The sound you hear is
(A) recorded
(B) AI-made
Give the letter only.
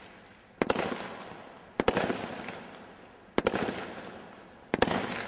A